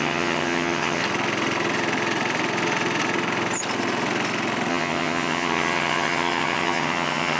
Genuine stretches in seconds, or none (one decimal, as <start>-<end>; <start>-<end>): 1.0-4.7